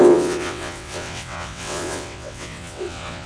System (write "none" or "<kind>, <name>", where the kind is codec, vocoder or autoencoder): vocoder, WaveNeXt